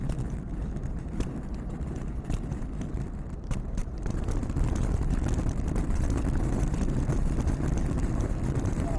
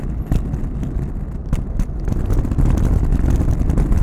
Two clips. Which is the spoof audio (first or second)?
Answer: first